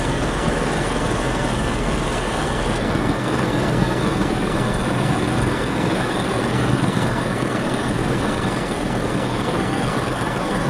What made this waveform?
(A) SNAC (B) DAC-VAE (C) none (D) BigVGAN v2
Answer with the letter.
A